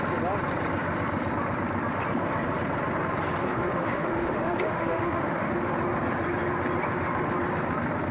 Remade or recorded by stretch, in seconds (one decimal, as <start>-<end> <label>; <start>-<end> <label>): 0.0-3.4 recorded; 3.4-5.5 remade; 5.5-8.1 recorded